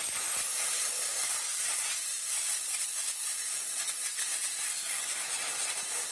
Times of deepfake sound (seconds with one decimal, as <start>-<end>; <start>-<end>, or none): 4.7-5.2